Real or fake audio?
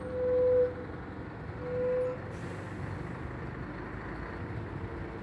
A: real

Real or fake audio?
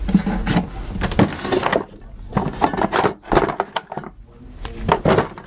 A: real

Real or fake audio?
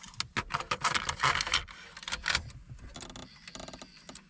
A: real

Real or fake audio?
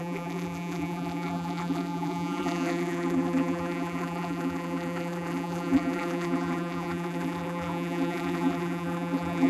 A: fake